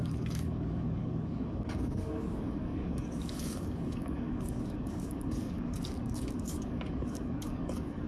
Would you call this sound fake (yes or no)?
yes